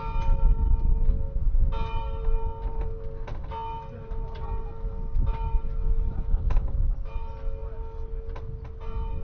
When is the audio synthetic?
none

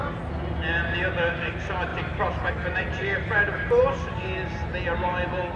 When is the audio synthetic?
3.0-3.8 (vocoder, BigVGAN v2)

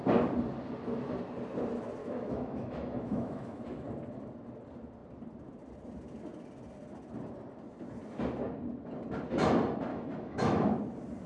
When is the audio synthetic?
2.0-3.6 (autoencoder, DAC-VAE); 9.9-10.8

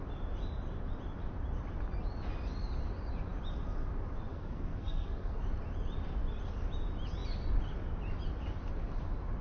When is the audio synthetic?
4.3-5.4 (codec, SNAC)